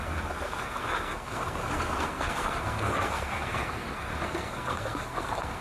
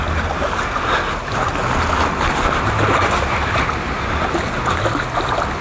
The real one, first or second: second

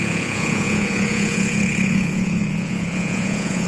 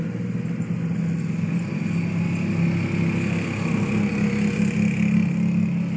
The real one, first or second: second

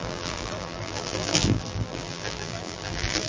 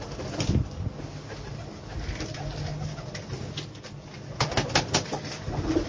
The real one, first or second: second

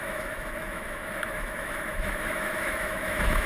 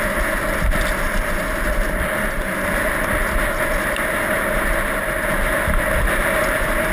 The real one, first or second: second